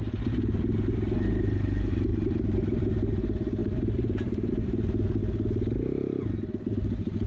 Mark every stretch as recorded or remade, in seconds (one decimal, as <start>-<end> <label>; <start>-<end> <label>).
0.0-2.1 recorded; 2.1-3.0 remade; 3.0-3.6 recorded; 3.6-4.5 remade; 4.5-7.3 recorded